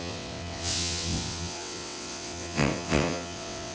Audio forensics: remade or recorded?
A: remade